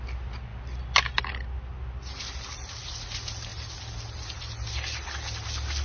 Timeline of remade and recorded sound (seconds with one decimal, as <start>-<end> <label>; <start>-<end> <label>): 0.0-5.8 recorded